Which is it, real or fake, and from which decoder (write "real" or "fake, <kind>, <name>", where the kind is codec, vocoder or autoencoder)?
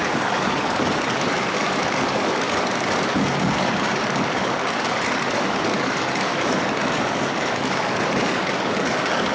fake, codec, DAC